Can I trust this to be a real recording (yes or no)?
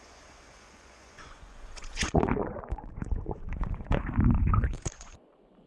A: no